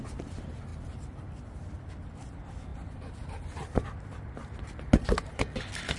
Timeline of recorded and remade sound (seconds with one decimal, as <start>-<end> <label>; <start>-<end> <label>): 0.0-6.0 recorded